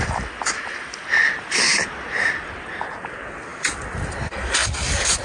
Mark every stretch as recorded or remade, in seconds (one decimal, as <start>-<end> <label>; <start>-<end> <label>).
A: 0.0-5.2 recorded

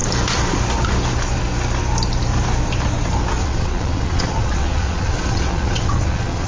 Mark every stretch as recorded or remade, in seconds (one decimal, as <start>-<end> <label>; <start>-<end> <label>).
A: 0.0-3.4 recorded; 3.4-6.5 remade

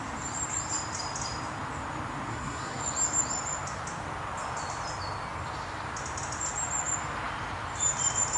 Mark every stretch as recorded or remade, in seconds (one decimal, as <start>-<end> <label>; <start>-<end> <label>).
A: 0.0-2.3 recorded; 2.3-2.8 remade; 2.8-8.4 recorded

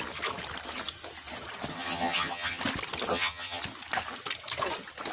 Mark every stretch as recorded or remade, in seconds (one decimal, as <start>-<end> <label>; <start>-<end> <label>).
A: 0.0-1.7 recorded; 1.7-2.6 remade; 2.6-3.1 recorded; 3.1-3.6 remade; 3.6-5.1 recorded